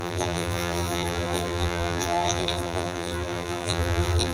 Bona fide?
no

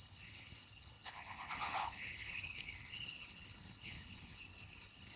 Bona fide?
no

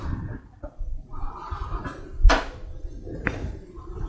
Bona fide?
yes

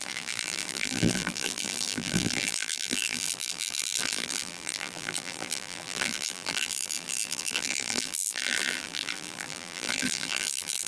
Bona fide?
no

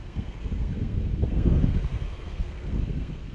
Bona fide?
no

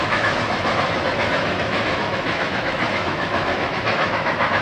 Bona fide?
no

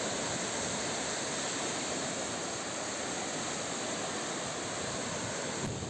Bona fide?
yes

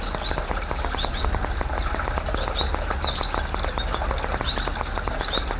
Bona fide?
yes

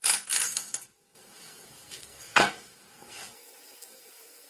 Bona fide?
no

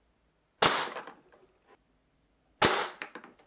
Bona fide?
yes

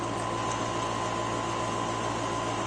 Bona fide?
yes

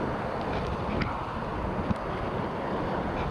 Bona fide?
yes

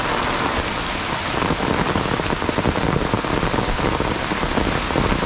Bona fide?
yes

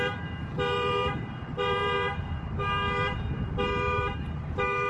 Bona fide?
no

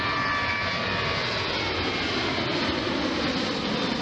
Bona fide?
no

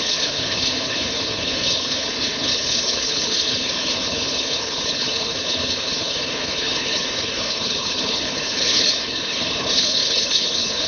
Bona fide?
no